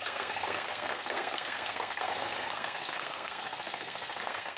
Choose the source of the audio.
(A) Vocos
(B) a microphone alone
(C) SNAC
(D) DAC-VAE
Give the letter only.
C